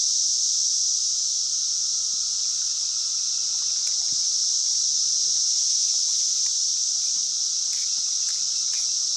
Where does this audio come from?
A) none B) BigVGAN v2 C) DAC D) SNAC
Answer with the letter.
A